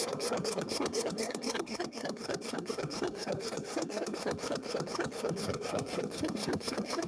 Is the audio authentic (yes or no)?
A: no